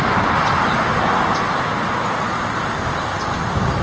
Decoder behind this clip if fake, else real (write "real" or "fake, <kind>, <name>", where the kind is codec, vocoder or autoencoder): real